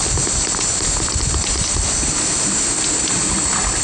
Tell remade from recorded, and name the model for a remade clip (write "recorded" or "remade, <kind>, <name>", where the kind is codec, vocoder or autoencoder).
recorded